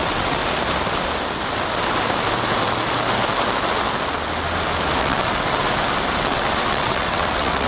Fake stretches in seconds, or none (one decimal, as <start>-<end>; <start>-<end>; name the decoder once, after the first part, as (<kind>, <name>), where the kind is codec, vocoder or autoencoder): 0.0-0.4 (vocoder, WaveNeXt); 5.0-5.6; 6.2-7.7

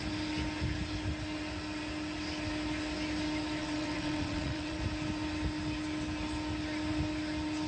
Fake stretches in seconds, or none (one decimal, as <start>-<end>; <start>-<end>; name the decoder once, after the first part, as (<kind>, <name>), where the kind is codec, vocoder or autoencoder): 3.6-4.8 (vocoder, WaveNeXt)

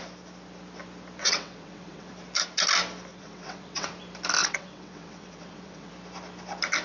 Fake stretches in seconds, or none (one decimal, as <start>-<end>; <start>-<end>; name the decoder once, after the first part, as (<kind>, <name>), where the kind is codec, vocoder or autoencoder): 1.2-2.1 (vocoder, WaveNeXt); 3.1-3.9; 4.4-5.9